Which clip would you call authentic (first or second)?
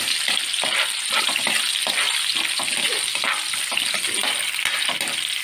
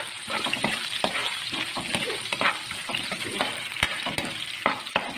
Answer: first